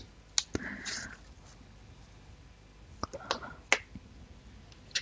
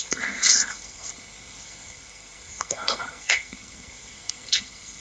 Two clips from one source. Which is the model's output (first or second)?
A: second